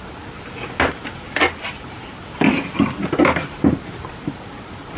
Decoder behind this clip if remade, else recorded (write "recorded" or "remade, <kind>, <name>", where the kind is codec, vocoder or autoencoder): recorded